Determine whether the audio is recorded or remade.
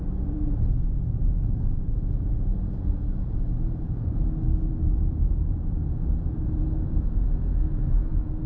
remade